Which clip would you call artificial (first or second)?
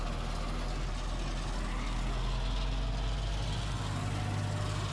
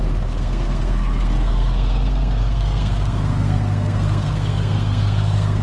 second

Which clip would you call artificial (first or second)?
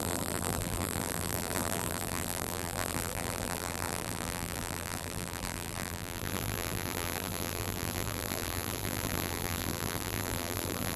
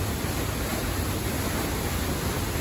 first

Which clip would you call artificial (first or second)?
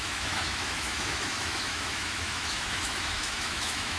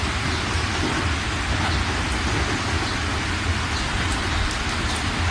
first